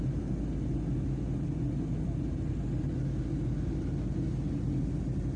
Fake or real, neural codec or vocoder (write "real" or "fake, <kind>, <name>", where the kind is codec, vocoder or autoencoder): real